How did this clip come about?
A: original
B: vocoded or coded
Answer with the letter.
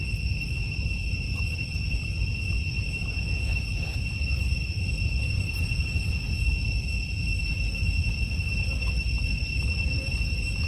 A